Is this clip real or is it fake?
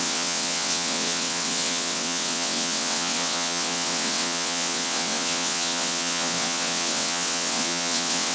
fake